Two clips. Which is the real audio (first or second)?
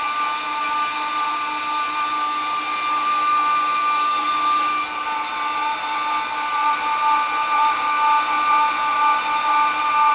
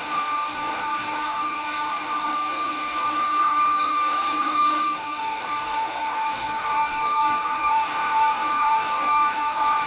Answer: first